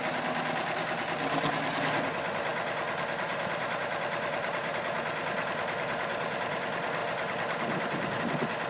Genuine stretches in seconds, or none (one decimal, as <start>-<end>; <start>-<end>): 0.0-8.7